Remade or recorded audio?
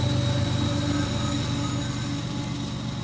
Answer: recorded